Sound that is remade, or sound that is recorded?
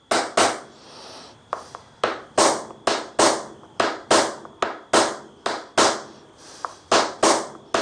recorded